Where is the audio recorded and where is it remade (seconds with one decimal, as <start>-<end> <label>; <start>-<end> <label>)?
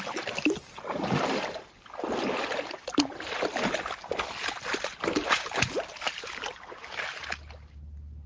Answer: 0.0-5.2 recorded; 5.2-5.7 remade; 5.7-8.3 recorded